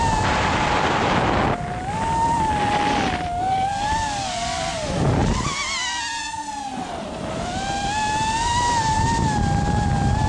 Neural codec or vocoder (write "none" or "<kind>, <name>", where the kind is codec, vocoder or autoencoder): none